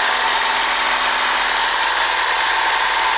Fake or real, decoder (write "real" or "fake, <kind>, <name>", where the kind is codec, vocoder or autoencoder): real